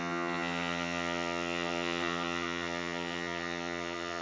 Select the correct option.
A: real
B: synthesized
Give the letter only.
B